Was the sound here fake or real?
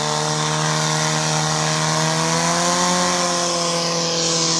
real